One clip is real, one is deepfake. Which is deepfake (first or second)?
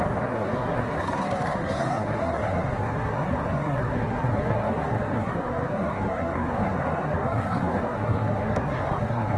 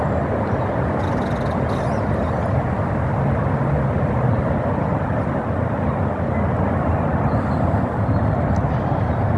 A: first